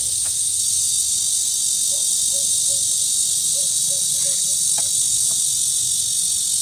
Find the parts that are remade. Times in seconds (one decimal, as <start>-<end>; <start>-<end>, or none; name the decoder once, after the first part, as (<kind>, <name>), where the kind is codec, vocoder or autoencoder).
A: 0.0-1.1 (autoencoder, DAC-VAE)